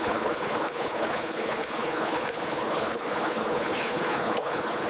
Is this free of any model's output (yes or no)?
no